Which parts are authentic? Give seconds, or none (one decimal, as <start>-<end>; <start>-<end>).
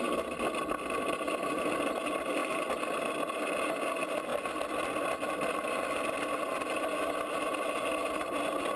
0.0-8.8